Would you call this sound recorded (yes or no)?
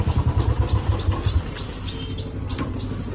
yes